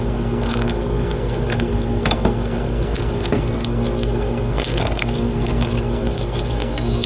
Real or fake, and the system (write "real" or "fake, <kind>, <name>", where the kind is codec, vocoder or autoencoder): fake, codec, SNAC